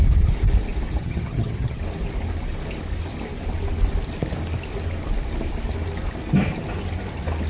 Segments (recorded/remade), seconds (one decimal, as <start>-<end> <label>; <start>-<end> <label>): 0.0-1.0 recorded; 1.0-1.8 remade; 1.8-7.5 recorded